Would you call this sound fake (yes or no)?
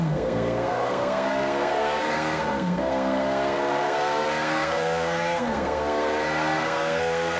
yes